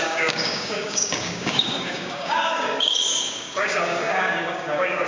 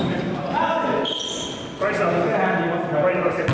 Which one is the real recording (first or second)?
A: second